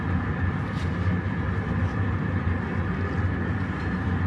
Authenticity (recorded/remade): recorded